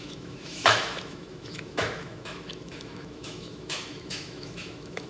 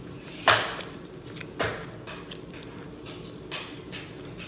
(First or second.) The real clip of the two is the second